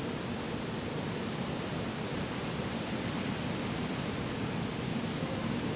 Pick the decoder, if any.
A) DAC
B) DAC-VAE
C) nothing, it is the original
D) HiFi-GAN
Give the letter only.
C